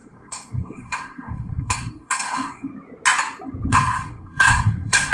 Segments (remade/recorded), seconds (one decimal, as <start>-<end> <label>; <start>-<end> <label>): 0.0-2.7 remade; 2.7-3.7 recorded; 3.7-5.1 remade